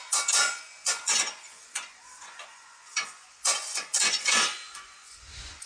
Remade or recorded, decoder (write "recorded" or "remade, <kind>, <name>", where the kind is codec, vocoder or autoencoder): remade, vocoder, Vocos